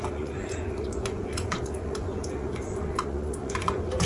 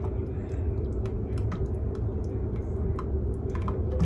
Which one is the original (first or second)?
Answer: second